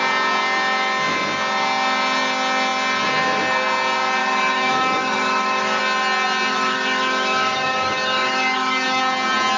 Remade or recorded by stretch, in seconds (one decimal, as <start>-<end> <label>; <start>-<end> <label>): 0.0-4.2 recorded; 4.2-5.8 remade; 5.8-6.5 recorded; 6.5-9.0 remade; 9.0-9.6 recorded